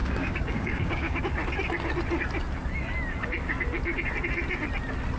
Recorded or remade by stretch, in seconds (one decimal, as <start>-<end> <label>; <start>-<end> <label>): 0.0-1.2 remade; 1.2-5.2 recorded